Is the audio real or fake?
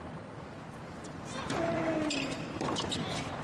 real